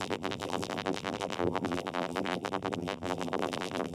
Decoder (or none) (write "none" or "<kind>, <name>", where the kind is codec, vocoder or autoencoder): vocoder, BigVGAN v2